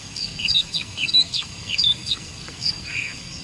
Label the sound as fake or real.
fake